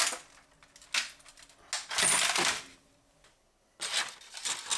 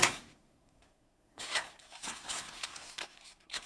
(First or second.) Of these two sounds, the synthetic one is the second